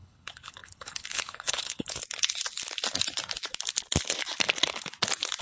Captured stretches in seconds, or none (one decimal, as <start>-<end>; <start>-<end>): 2.0-5.4